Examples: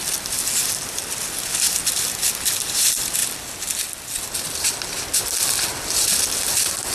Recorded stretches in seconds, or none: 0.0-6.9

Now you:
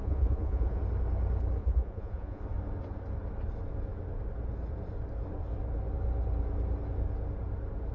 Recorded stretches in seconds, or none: 0.8-1.6; 2.4-7.9